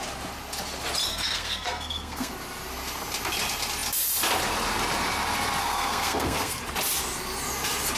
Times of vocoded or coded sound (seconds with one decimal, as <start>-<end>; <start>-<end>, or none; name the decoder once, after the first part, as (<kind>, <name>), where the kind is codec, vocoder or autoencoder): 1.1-2.3 (codec, SNAC); 5.6-6.6